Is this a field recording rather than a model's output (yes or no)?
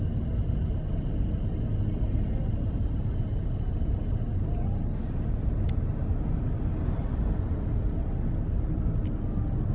yes